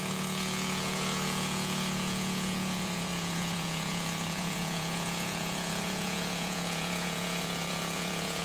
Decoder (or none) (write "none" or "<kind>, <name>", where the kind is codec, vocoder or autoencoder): vocoder, Vocos